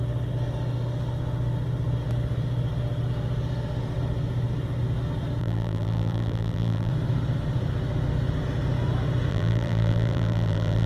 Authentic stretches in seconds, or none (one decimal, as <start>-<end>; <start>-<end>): 0.0-5.4; 6.9-9.3